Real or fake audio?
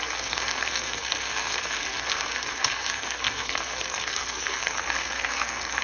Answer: fake